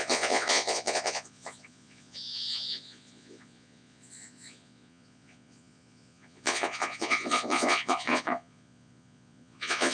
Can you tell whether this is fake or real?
fake